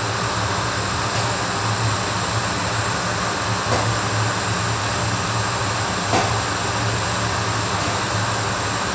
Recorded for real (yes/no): yes